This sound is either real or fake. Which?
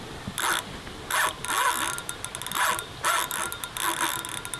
real